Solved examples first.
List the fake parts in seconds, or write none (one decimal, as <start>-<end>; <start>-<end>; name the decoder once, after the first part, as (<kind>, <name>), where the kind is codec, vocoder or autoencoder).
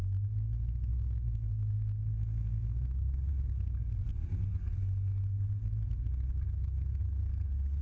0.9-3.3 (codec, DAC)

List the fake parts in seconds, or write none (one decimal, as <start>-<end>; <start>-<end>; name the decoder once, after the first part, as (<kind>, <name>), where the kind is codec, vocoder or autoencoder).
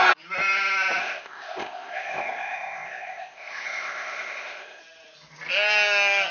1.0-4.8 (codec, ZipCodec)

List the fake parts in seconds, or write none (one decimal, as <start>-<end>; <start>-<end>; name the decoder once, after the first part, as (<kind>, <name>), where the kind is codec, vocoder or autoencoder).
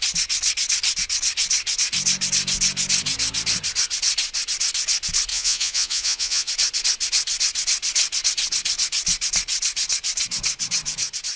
5.3-6.5 (vocoder, Vocos)